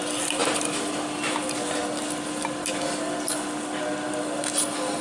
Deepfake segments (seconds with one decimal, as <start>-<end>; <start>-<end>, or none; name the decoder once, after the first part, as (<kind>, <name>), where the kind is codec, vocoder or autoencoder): none